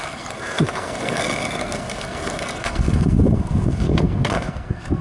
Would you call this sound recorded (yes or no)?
no